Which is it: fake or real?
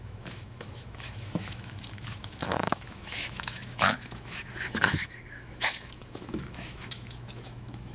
fake